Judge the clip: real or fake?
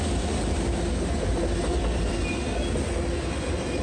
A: real